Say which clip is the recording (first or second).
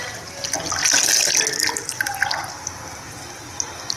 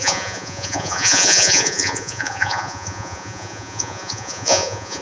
first